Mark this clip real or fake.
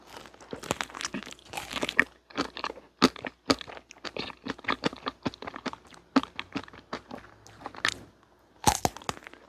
real